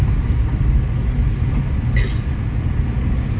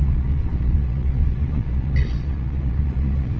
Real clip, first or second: first